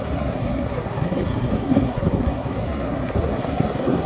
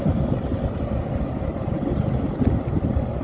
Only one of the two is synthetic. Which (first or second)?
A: first